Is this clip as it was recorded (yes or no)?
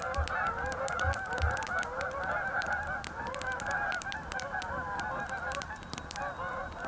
yes